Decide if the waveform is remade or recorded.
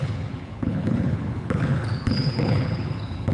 remade